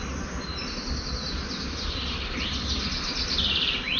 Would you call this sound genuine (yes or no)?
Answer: yes